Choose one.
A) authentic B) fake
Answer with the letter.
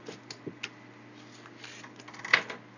A